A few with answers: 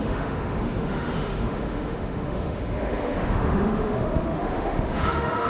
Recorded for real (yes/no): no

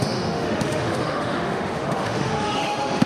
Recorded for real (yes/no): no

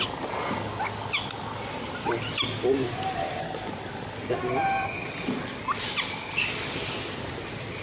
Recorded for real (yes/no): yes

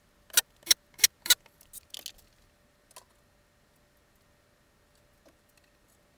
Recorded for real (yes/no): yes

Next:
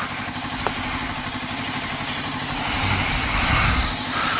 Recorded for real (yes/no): yes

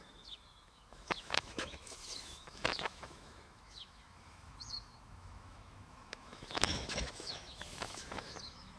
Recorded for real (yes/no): no